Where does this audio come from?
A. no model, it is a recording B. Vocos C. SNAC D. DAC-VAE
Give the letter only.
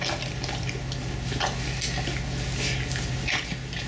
A